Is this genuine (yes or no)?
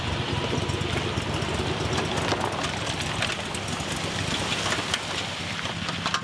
yes